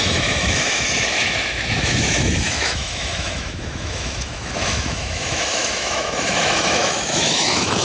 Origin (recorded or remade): remade